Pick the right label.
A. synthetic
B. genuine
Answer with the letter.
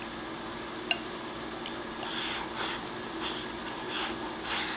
B